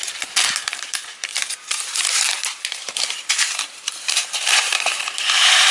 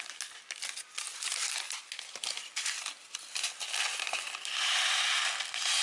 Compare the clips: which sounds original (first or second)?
second